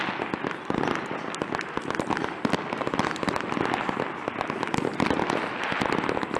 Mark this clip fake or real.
real